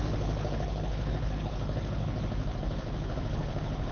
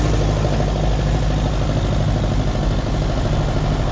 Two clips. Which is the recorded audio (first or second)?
second